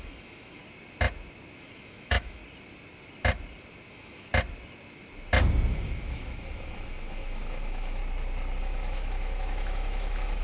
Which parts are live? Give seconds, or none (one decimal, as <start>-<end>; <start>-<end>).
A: 0.6-1.6; 2.4-3.9; 4.3-5.7; 8.0-8.6